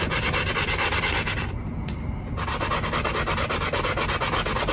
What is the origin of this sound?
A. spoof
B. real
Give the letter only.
B